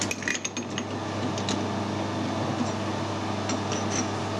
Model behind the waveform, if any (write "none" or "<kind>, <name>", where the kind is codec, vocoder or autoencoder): none